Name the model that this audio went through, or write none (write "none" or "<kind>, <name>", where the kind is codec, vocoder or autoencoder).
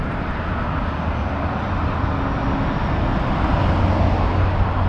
none